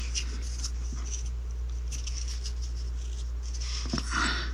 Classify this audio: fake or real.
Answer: real